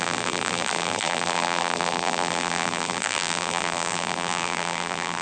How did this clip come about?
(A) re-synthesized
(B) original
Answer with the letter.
A